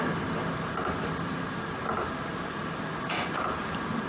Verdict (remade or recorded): recorded